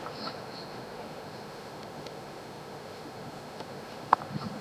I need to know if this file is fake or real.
fake